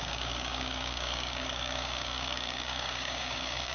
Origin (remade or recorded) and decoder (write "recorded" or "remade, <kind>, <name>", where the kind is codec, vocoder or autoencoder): remade, codec, DAC